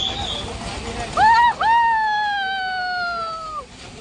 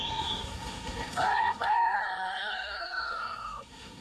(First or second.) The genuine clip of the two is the first